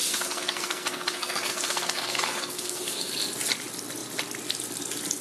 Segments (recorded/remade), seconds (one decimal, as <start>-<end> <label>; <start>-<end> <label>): 0.0-3.1 remade; 3.1-5.2 recorded